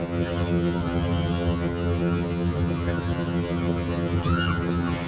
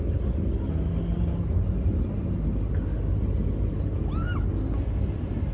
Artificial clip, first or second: first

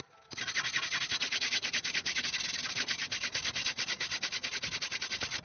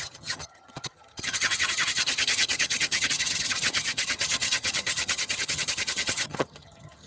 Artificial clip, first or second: second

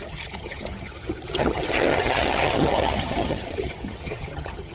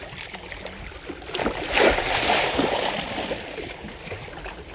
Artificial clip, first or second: first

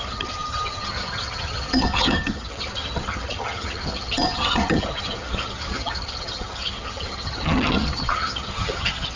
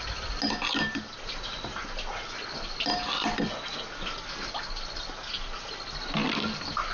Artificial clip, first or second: first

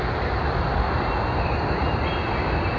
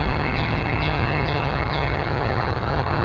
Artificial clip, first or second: second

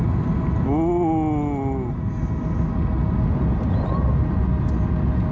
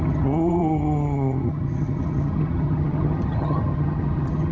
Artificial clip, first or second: second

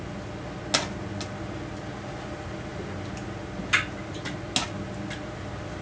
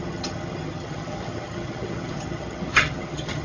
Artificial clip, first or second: second